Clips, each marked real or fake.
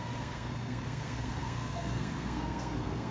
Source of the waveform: fake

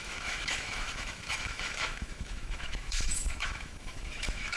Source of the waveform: fake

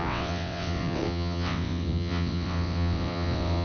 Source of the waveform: fake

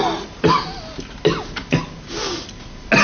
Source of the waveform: real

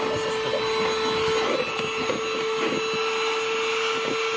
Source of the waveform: real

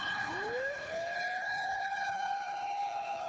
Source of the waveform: fake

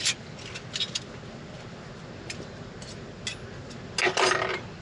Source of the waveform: real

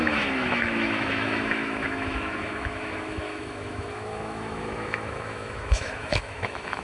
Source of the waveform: fake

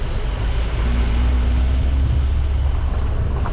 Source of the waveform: real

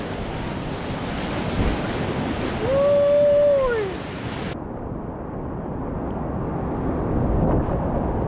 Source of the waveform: real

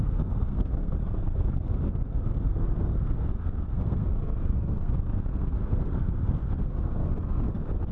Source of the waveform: fake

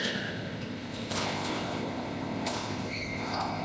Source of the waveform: fake